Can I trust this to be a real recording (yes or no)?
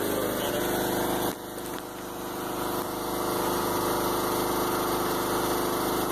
yes